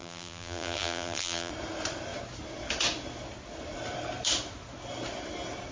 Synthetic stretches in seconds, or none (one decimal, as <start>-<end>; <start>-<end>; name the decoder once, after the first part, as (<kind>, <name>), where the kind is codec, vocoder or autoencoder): 0.0-1.5 (vocoder, BigVGAN v2)